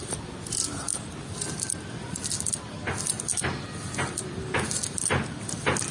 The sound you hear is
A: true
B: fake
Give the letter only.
A